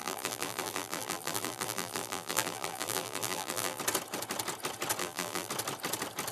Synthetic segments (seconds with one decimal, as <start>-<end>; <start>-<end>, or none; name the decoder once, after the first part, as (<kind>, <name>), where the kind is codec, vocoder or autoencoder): 0.0-3.8 (vocoder, BigVGAN v2); 5.0-5.5

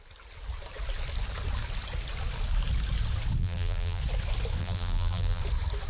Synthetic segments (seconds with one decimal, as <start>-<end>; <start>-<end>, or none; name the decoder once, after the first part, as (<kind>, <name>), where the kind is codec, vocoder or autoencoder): 3.4-4.0 (vocoder, BigVGAN v2); 4.6-5.4

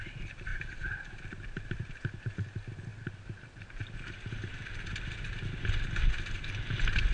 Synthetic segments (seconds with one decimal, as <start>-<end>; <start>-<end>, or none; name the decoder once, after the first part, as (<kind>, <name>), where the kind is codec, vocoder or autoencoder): 0.5-2.2 (vocoder, BigVGAN v2)